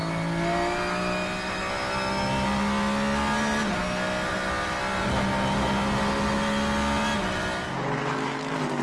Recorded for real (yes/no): yes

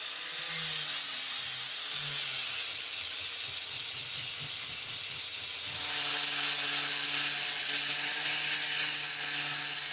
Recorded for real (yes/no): yes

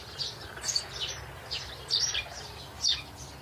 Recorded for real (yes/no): yes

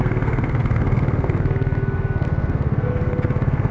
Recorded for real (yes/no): no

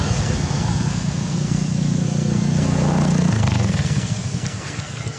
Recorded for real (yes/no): no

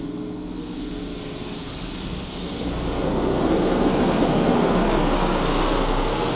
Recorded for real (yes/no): no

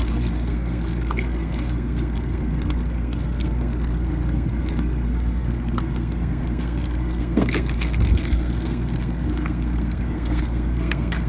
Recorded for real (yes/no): no